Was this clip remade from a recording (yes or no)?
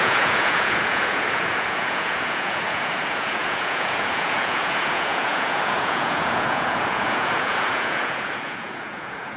yes